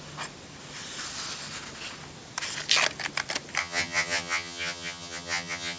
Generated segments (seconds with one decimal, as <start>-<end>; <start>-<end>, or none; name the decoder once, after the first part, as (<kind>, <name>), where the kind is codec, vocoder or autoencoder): 3.6-5.8 (vocoder, HiFi-GAN)